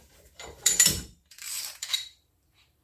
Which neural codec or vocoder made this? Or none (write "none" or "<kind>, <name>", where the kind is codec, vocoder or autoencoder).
vocoder, BigVGAN v2